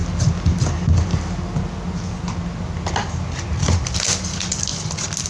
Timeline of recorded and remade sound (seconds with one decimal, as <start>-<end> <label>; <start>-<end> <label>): 0.0-5.3 recorded